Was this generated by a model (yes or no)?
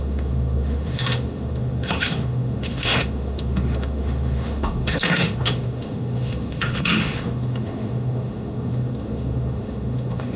yes